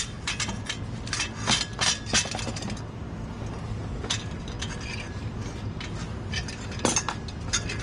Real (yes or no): yes